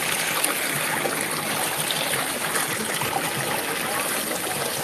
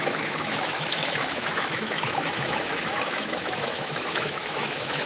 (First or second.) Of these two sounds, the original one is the first